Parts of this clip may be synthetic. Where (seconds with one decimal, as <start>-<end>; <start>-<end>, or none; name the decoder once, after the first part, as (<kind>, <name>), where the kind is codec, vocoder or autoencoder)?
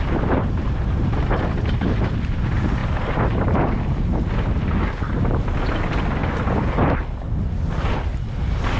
none